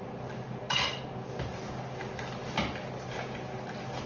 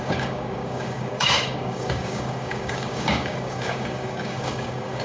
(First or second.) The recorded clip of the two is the first